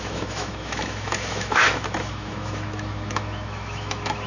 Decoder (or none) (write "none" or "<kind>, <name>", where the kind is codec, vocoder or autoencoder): autoencoder, DAC-VAE